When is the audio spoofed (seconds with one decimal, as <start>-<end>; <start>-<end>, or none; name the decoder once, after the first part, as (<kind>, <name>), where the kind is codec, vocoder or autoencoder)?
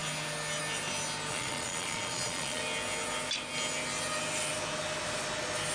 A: 1.3-2.6 (vocoder, Vocos)